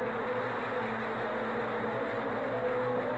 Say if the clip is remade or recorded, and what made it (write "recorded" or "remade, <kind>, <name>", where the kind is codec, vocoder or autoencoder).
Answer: recorded